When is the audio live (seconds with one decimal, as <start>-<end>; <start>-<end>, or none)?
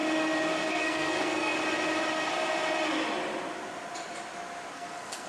0.0-0.7; 1.5-4.7